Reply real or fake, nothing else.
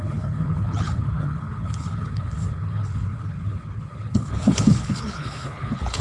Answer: fake